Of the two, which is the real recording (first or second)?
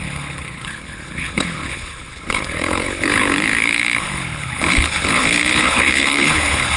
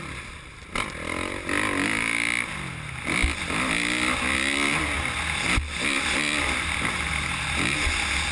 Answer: second